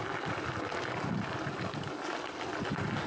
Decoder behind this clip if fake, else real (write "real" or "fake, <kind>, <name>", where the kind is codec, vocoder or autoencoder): real